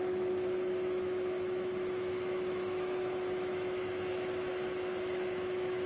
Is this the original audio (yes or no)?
no